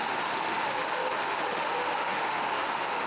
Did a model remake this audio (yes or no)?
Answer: yes